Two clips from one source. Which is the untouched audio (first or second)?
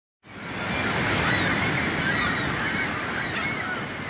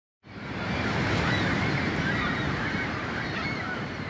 first